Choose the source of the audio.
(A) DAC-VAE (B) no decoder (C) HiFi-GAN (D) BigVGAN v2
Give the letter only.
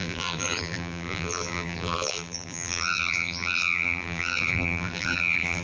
D